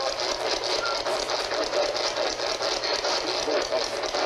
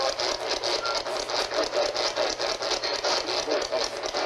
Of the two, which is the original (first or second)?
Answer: second